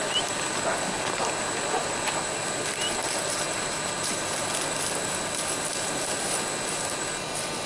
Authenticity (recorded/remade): recorded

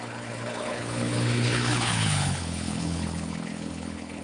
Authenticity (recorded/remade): remade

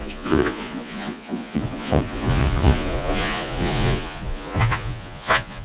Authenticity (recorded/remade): remade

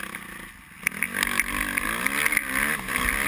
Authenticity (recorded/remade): recorded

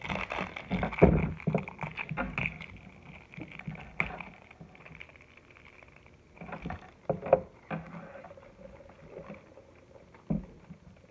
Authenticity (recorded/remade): recorded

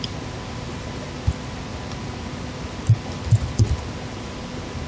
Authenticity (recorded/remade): recorded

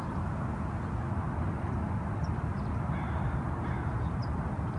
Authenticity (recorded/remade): recorded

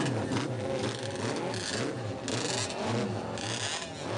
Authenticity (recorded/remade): recorded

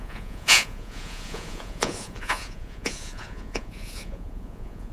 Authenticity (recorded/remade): remade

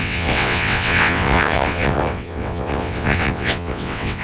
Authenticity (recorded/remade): remade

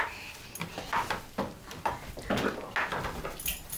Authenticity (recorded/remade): recorded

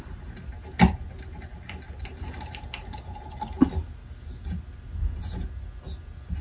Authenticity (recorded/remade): recorded